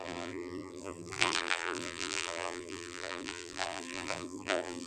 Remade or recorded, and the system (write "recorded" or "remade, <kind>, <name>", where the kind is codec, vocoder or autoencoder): remade, vocoder, BigVGAN v2